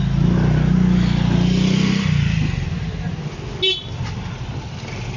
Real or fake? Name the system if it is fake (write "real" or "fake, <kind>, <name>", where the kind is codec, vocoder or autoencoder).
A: real